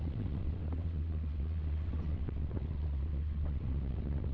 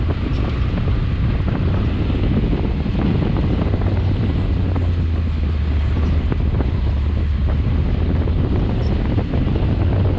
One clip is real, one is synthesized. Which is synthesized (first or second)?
first